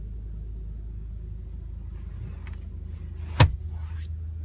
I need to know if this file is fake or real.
real